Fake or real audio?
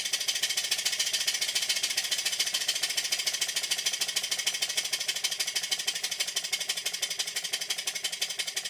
real